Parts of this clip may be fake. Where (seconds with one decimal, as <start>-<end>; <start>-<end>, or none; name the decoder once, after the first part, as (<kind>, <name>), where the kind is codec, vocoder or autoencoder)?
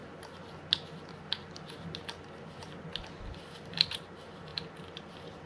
3.3-5.5 (vocoder, BigVGAN v2)